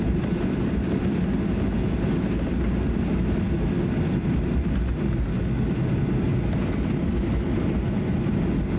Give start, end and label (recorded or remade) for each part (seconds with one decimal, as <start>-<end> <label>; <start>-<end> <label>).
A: 0.0-8.8 recorded